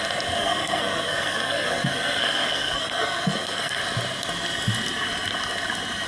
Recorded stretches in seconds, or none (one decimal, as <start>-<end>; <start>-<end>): 0.0-0.4; 3.8-6.1